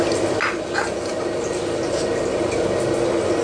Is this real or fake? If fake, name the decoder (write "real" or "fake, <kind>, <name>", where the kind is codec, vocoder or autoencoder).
real